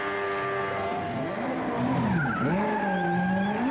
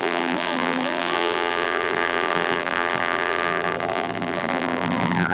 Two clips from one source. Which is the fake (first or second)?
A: second